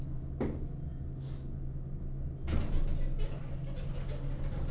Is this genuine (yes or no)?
yes